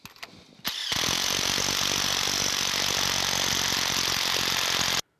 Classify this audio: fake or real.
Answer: real